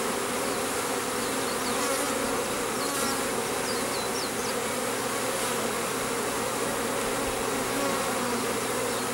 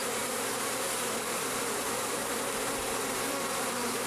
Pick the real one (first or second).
first